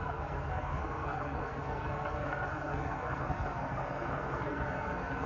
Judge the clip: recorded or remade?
remade